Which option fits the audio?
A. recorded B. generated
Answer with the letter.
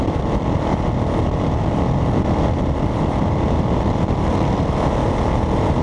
A